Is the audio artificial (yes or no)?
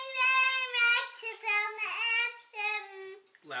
no